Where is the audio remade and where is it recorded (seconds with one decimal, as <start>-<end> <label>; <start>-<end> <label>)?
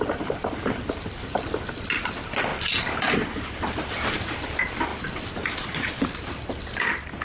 0.0-7.2 recorded